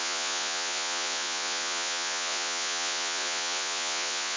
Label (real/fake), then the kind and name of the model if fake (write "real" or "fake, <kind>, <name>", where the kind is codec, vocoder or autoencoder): fake, vocoder, Vocos